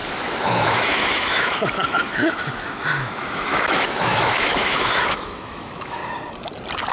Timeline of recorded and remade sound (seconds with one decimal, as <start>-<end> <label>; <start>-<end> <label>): 0.0-6.0 remade; 6.0-6.9 recorded